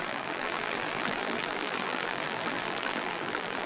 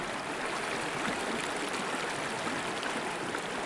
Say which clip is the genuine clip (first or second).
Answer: second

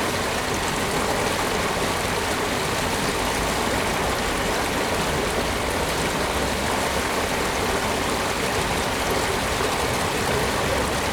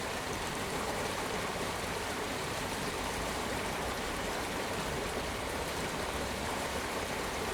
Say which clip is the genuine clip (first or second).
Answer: first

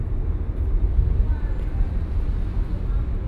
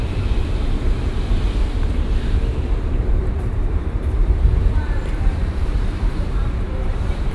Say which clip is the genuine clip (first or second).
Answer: first